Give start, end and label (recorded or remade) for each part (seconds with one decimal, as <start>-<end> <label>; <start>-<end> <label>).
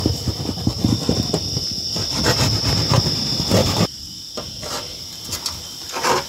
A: 0.0-3.6 recorded; 3.6-4.1 remade; 4.1-6.3 recorded